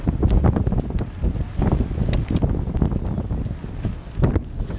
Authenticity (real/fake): real